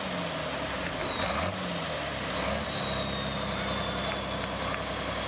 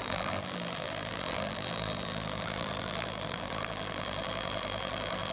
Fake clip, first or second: second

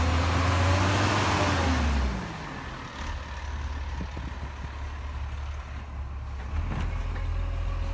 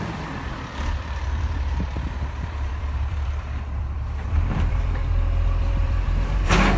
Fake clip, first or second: second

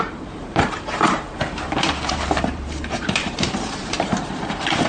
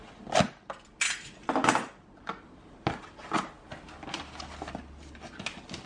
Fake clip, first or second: first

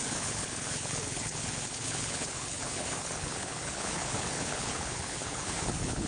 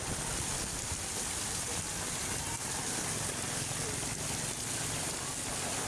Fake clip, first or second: first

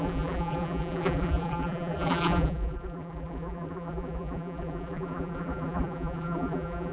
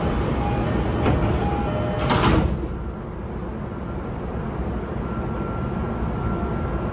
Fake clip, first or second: first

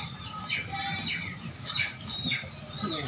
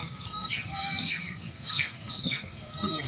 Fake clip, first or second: second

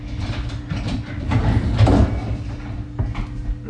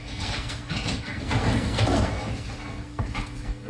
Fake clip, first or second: second